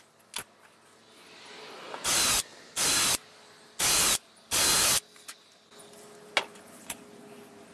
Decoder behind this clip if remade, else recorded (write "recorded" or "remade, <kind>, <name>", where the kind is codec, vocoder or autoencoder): recorded